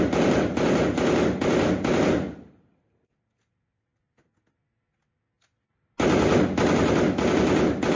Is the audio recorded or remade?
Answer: recorded